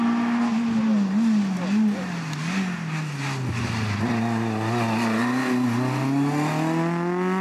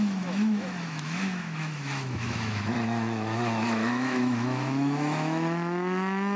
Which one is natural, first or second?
first